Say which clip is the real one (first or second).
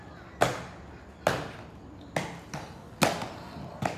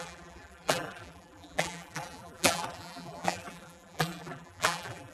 first